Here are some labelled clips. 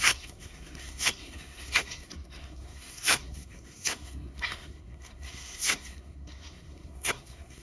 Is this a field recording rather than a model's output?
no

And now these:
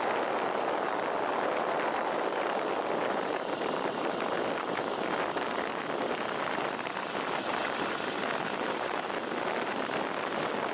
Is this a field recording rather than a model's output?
yes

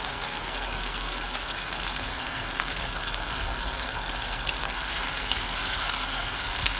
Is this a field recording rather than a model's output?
no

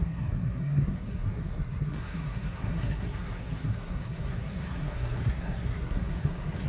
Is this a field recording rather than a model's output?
no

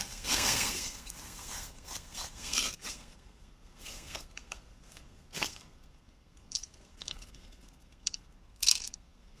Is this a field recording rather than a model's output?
no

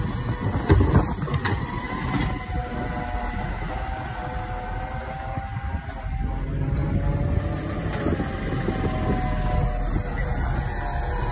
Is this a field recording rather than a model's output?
yes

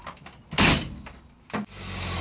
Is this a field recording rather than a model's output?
yes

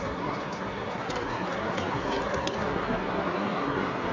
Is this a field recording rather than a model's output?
no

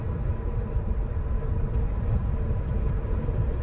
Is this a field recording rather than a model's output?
yes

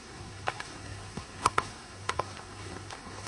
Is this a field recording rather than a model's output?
no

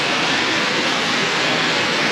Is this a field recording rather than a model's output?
no